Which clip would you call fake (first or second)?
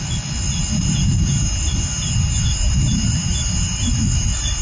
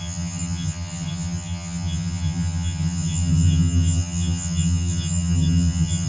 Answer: second